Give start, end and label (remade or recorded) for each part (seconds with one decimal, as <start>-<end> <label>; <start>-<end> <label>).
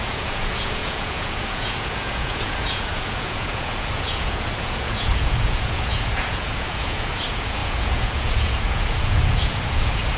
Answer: 0.0-10.2 remade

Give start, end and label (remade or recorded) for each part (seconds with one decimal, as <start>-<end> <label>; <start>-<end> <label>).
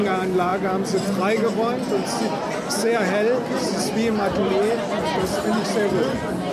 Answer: 0.0-6.5 recorded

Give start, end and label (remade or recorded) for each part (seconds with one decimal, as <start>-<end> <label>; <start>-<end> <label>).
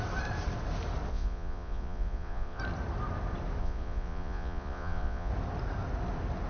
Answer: 0.0-1.1 recorded; 1.1-2.6 remade; 2.6-3.6 recorded; 3.6-5.3 remade; 5.3-6.5 recorded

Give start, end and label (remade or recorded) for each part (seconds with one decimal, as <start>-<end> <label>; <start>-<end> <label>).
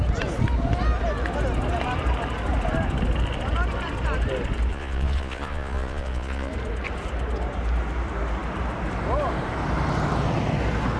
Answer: 0.0-4.7 recorded; 4.7-6.5 remade; 6.5-11.0 recorded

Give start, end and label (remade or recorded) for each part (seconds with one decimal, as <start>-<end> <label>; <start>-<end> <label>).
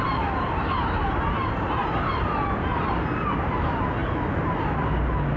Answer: 0.0-5.4 recorded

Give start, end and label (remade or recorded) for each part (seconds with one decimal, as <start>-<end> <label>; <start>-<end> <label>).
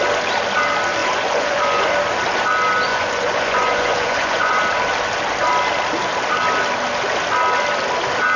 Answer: 0.0-1.0 recorded; 1.0-1.9 remade; 1.9-2.9 recorded; 2.9-4.6 remade; 4.6-8.4 recorded